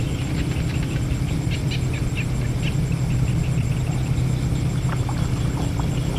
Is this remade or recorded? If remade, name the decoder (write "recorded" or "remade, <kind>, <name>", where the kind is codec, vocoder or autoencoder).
recorded